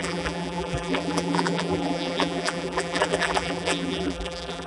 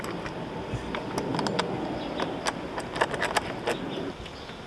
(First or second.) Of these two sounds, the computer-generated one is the first